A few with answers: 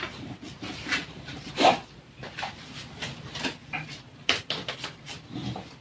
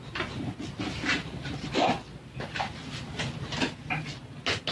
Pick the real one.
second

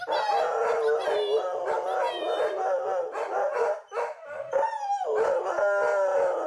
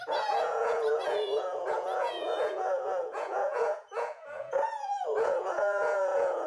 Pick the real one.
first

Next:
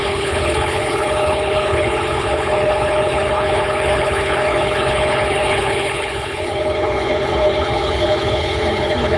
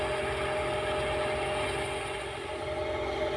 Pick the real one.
second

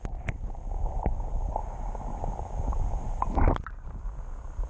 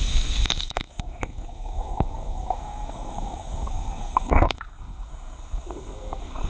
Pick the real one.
first